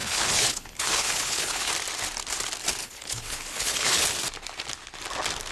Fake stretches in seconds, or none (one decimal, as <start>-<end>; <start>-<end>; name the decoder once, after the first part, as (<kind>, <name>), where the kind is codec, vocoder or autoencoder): 0.0-1.7 (codec, HILCodec); 2.8-4.0